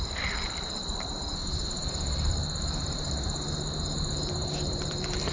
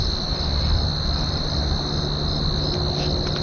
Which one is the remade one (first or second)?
first